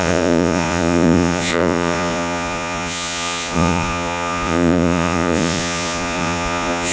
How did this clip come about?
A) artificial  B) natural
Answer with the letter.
A